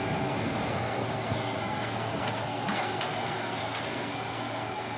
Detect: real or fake fake